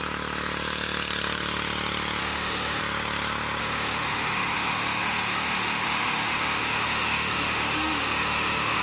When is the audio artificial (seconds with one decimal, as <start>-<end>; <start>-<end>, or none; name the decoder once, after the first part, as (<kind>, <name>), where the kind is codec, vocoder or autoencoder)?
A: 2.2-2.8 (autoencoder, DAC-VAE); 3.6-8.8

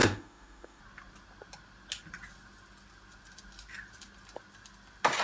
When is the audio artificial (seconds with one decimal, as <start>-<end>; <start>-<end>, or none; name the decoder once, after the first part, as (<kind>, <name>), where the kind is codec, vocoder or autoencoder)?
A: 0.0-0.8 (autoencoder, DAC-VAE)